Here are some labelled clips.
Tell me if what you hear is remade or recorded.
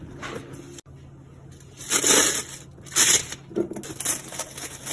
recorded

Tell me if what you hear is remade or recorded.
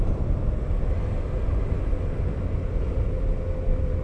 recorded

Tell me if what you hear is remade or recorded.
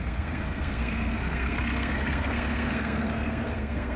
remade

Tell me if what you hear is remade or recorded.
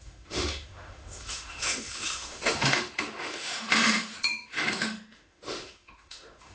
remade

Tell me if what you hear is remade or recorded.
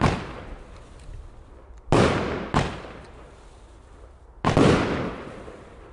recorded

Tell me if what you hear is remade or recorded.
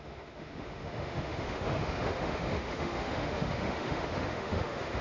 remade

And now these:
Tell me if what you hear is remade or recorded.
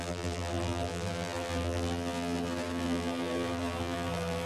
remade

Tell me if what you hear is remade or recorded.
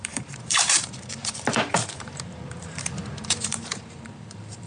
remade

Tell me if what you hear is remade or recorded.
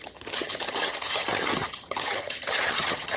remade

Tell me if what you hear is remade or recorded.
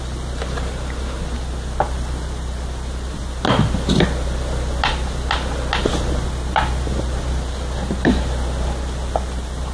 recorded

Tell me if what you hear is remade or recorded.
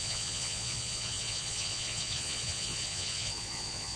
remade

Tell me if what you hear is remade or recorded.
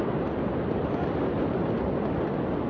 recorded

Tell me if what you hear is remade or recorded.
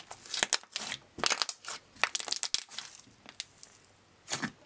recorded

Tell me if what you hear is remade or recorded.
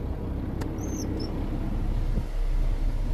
recorded